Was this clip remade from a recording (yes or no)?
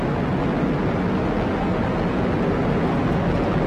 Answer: no